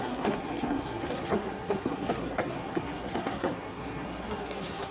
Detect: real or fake fake